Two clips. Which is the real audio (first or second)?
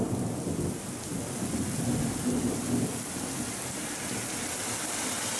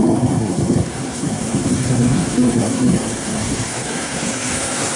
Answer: first